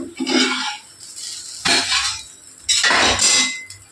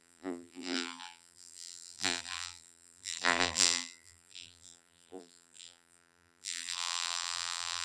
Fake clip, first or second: second